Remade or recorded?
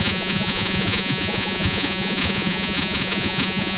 remade